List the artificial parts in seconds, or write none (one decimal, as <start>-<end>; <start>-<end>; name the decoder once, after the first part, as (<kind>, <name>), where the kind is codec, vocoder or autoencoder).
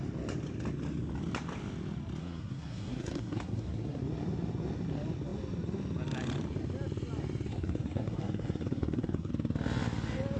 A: 2.2-4.0 (codec, SNAC); 7.5-9.3